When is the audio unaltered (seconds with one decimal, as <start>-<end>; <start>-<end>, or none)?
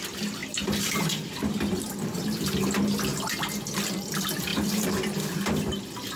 0.0-0.4; 2.5-3.1; 4.1-4.5; 5.2-6.2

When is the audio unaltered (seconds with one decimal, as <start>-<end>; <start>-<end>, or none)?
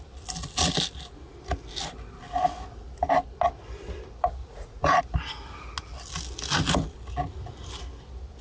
0.0-4.4; 5.0-8.4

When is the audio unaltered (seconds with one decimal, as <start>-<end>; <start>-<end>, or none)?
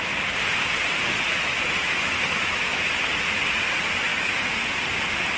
0.0-1.3; 2.9-4.1; 4.8-5.4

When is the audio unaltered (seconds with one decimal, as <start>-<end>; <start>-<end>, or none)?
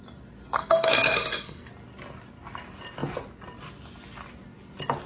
0.0-0.6; 1.7-5.1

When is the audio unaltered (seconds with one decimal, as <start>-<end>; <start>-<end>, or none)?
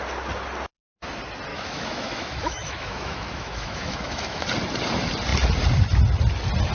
0.0-1.5; 4.4-6.7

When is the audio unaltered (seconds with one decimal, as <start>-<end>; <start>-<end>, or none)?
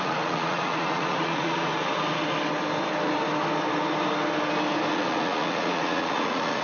1.7-4.9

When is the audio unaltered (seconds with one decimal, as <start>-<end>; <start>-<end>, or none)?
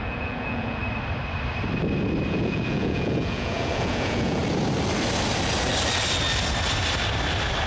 0.8-2.3; 4.4-7.7